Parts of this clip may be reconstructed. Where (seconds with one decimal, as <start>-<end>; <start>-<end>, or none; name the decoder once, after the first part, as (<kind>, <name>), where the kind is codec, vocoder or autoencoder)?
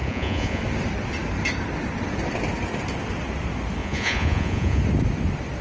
0.0-0.6 (vocoder, Vocos); 3.8-4.8